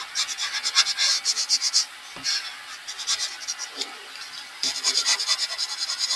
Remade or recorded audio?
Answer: recorded